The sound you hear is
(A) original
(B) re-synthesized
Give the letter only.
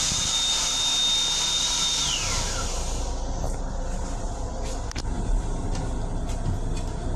A